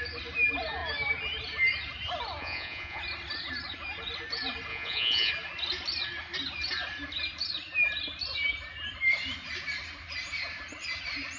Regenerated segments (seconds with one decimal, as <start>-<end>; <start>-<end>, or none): 2.4-3.0; 4.7-5.3